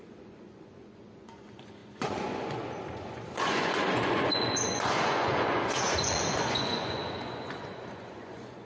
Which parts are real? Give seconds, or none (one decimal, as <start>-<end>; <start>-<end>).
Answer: none